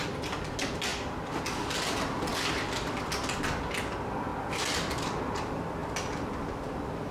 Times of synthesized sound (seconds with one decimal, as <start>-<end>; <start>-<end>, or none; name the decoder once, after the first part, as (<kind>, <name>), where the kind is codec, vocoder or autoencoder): none